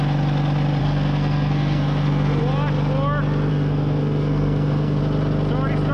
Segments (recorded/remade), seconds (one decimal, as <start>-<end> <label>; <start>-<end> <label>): 0.0-0.8 recorded; 0.8-2.4 remade; 2.4-3.5 recorded; 3.5-5.0 remade; 5.0-5.9 recorded